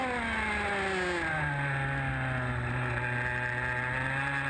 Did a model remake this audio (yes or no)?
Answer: no